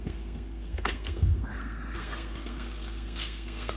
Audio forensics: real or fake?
fake